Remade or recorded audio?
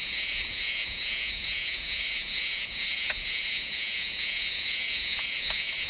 remade